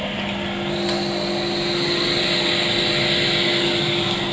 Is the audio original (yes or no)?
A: yes